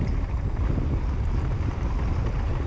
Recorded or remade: recorded